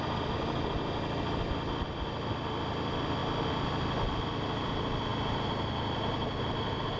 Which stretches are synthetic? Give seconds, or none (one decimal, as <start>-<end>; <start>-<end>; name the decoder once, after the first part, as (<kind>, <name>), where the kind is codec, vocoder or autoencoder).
none